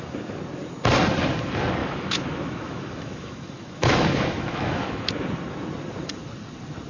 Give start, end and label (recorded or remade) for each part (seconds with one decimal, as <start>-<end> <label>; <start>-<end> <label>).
0.0-1.8 recorded; 1.8-5.1 remade; 5.1-6.9 recorded